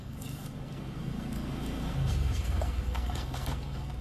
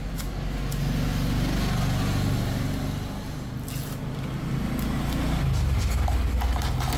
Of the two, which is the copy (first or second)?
first